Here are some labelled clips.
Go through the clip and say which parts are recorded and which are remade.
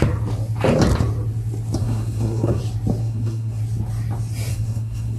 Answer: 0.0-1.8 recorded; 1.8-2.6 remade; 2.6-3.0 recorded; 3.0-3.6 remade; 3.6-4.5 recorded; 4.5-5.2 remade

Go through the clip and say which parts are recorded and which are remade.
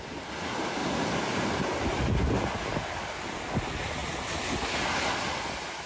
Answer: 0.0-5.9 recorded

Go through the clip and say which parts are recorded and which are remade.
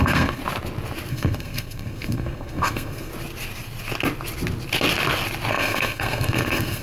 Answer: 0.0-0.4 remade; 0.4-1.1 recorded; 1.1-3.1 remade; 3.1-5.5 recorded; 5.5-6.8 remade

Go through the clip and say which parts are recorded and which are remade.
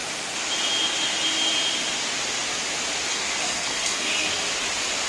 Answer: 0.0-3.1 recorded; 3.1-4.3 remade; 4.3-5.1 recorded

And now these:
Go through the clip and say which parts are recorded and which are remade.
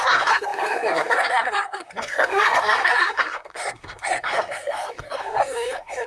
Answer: 0.0-6.1 remade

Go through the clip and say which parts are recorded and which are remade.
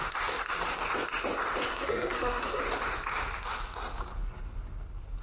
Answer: 0.0-1.7 recorded; 1.7-2.6 remade; 2.6-5.2 recorded